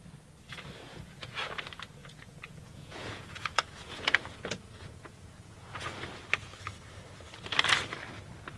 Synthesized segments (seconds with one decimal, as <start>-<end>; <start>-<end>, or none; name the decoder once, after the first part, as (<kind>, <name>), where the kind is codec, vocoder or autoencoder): 0.9-1.5 (vocoder, Vocos); 2.0-5.9